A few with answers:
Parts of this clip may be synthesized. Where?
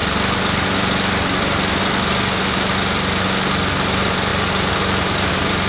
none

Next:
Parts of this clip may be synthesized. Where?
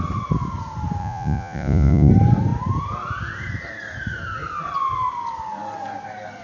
1.0-2.1 (vocoder, Vocos)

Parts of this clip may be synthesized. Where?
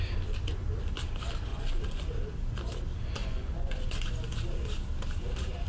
1.5-2.1 (vocoder, Vocos); 3.2-3.8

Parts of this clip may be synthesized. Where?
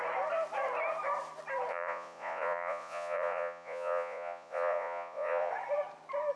1.7-5.5 (vocoder, Vocos)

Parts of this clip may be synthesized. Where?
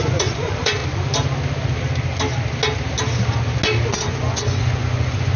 0.0-0.8 (vocoder, Vocos); 4.0-5.4